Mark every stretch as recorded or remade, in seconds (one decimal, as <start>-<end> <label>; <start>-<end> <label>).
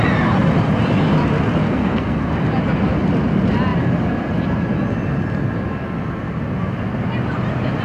0.0-1.6 recorded; 1.6-2.3 remade; 2.3-7.8 recorded